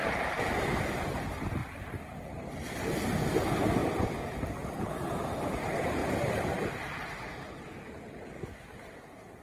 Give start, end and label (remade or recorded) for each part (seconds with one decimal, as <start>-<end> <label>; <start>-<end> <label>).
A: 0.0-0.7 remade; 0.7-3.8 recorded; 3.8-4.9 remade; 4.9-6.0 recorded; 6.0-7.9 remade; 7.9-9.4 recorded